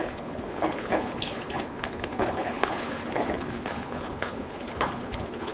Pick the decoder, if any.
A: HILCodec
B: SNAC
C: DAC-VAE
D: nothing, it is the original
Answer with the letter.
A